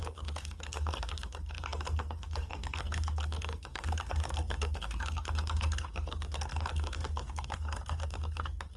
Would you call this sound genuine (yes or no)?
no